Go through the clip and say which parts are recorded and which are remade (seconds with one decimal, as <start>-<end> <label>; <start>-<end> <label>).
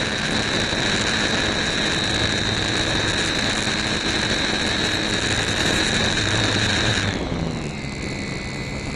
0.0-5.6 recorded; 5.6-7.0 remade; 7.0-9.0 recorded